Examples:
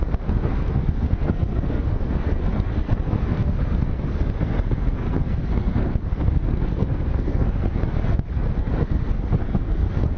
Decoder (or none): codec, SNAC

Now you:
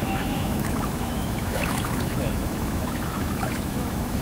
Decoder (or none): autoencoder, DAC-VAE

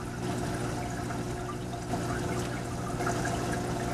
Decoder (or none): none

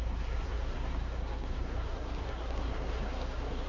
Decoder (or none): codec, SNAC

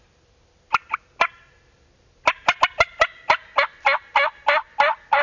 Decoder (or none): none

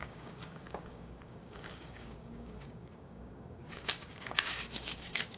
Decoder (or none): codec, DAC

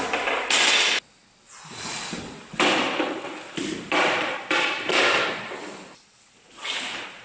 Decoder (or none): none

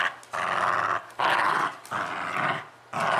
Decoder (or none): none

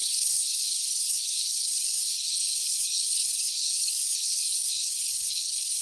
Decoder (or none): codec, HILCodec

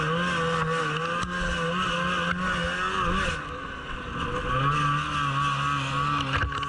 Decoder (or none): none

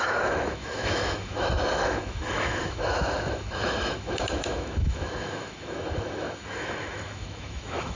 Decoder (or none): autoencoder, DAC-VAE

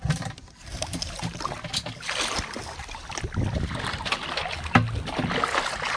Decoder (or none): none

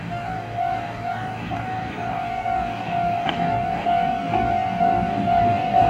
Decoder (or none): codec, DAC